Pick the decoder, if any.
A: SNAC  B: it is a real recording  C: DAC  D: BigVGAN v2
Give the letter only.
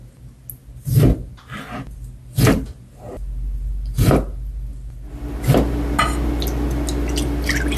B